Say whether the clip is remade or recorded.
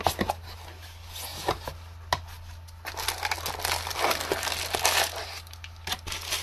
recorded